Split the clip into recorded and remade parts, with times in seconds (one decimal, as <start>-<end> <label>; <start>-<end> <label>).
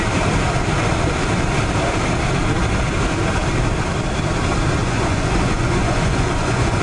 0.0-4.8 recorded; 4.8-6.8 remade